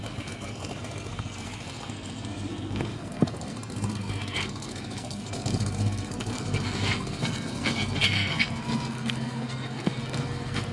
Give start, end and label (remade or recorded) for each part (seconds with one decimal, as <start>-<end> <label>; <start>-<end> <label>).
0.0-10.7 remade

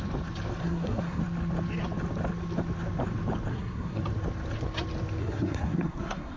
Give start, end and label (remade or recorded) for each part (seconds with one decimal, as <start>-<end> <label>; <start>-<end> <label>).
0.0-0.6 recorded; 0.6-1.2 remade; 1.2-3.5 recorded; 3.5-4.0 remade; 4.0-5.2 recorded; 5.2-6.4 remade

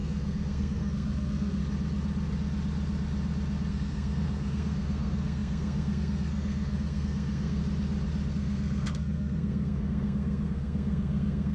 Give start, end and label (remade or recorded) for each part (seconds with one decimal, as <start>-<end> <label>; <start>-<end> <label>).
0.0-1.6 remade; 1.6-3.7 recorded; 3.7-7.6 remade; 7.6-8.3 recorded; 8.3-11.5 remade

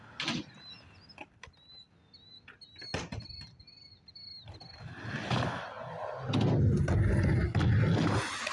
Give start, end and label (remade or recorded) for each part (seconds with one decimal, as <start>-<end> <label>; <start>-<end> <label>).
0.0-8.5 recorded

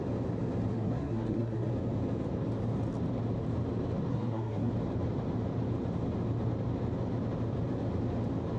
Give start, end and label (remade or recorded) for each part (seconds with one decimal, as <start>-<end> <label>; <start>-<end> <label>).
0.0-0.7 recorded; 0.7-1.7 remade; 1.7-4.1 recorded; 4.1-4.7 remade; 4.7-8.6 recorded